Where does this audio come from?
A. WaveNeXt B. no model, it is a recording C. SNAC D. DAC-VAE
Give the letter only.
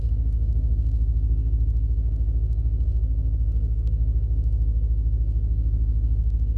C